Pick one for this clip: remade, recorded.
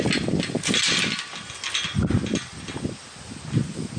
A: recorded